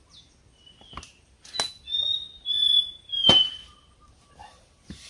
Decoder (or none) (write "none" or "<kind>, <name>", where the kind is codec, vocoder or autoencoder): none